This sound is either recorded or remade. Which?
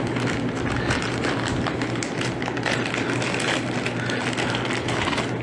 recorded